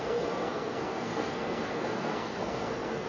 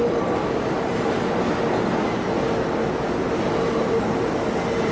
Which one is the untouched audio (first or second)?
second